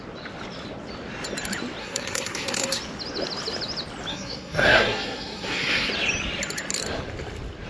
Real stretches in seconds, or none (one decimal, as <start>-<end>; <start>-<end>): 0.0-1.8; 2.8-4.1; 5.9-7.7